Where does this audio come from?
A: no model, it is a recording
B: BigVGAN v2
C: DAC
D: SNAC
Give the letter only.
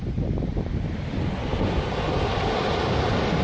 A